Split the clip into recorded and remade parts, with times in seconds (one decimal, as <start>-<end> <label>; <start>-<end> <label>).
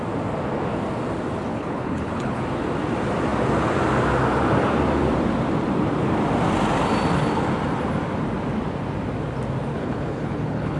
0.0-1.5 recorded; 1.5-2.4 remade; 2.4-9.7 recorded; 9.7-10.8 remade